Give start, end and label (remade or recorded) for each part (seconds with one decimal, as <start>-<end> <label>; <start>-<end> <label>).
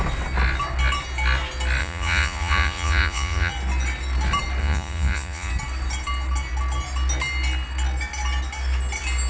0.0-1.8 recorded; 1.8-3.5 remade; 3.5-4.6 recorded; 4.6-5.5 remade; 5.5-9.3 recorded